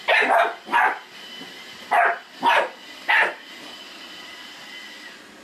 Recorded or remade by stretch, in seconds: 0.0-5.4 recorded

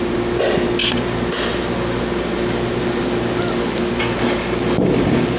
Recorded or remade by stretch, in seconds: 0.0-5.4 recorded

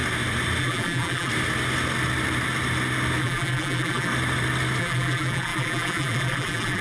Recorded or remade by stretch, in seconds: 0.0-0.6 recorded; 0.6-1.3 remade; 1.3-3.2 recorded; 3.2-4.1 remade; 4.1-4.8 recorded; 4.8-6.8 remade

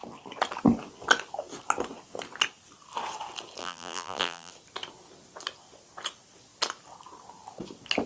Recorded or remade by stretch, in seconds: 0.0-3.6 recorded; 3.6-4.5 remade; 4.5-8.1 recorded